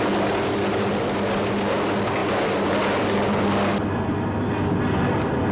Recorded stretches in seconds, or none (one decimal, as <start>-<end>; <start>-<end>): 0.0-5.5